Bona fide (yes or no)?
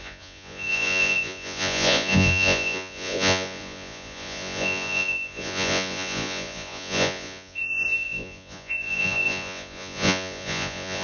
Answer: no